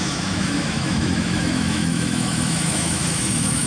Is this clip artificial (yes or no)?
yes